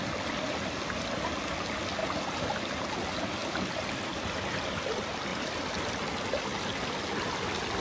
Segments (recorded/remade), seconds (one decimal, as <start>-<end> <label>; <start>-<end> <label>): 0.0-7.8 recorded